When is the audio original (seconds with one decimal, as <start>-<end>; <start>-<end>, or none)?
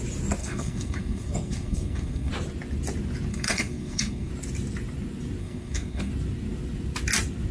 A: 0.0-0.4; 2.3-3.3; 4.3-5.4; 6.1-7.5